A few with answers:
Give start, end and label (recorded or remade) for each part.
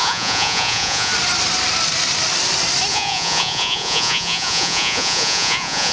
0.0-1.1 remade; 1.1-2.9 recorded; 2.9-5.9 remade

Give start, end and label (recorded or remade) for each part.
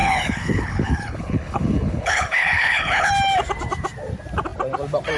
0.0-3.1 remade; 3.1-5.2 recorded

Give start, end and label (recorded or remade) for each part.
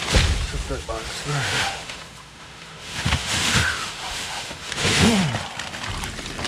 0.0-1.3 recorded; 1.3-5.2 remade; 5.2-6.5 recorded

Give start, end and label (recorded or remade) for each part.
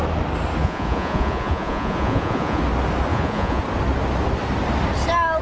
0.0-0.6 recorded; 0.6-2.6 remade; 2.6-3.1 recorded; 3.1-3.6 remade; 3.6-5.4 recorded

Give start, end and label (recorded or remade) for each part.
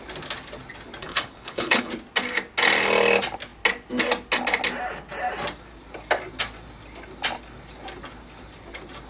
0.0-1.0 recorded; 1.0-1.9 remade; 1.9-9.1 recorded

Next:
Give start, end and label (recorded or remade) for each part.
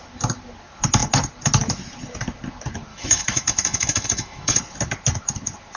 0.0-2.9 recorded; 2.9-4.6 remade; 4.6-5.8 recorded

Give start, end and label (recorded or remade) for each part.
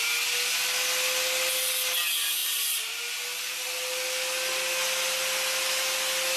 0.0-2.4 recorded; 2.4-3.0 remade; 3.0-6.4 recorded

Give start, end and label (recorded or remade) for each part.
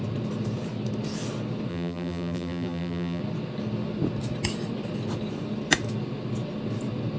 0.0-1.7 recorded; 1.7-3.2 remade; 3.2-7.2 recorded